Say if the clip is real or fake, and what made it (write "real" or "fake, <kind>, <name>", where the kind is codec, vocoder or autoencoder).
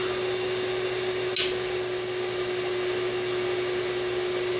real